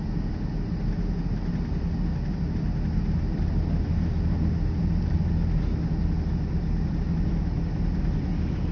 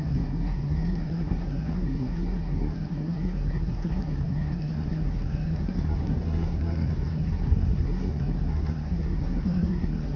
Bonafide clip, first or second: first